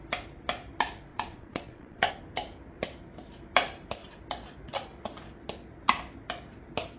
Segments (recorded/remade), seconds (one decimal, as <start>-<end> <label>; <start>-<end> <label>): 0.0-1.1 recorded; 1.1-2.1 remade; 2.1-7.0 recorded